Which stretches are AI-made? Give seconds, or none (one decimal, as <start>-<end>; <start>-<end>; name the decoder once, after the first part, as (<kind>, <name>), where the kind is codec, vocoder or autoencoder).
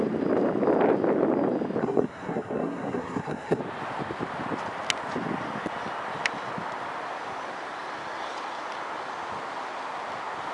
1.8-3.6 (codec, SNAC)